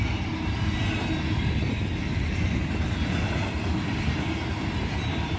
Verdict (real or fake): real